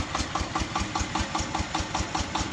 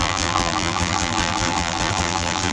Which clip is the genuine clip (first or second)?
first